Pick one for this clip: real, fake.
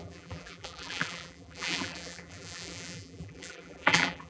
fake